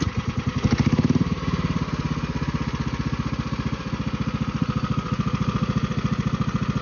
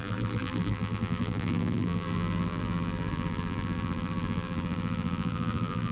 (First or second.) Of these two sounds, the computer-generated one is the second